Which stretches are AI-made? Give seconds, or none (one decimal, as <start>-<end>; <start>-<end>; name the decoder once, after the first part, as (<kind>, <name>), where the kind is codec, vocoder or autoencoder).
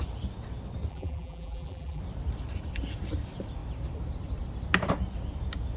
0.9-2.0 (vocoder, BigVGAN v2)